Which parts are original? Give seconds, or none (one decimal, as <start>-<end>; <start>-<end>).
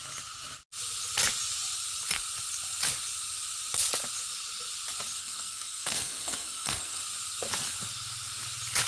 0.0-5.2; 7.0-8.9